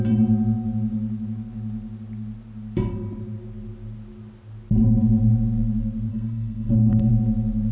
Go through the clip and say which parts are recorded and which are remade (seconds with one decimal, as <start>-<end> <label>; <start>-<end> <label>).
0.0-6.1 recorded; 6.1-7.1 remade; 7.1-7.7 recorded